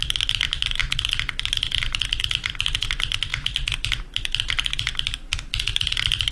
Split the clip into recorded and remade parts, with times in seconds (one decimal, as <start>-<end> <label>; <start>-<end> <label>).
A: 0.0-0.8 remade; 0.8-2.2 recorded; 2.2-6.3 remade